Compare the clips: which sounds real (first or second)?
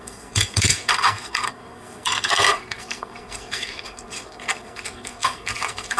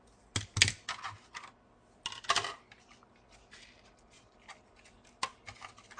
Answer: second